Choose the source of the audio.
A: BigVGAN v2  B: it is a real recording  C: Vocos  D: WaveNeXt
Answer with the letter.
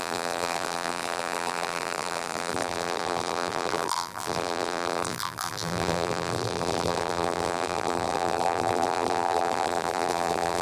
A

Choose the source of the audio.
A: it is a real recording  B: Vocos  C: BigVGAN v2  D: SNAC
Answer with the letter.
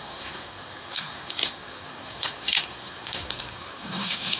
D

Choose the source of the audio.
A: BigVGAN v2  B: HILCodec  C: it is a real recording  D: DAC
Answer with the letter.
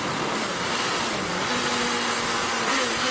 C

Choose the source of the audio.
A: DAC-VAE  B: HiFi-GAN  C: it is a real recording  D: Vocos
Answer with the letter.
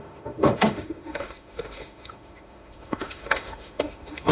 A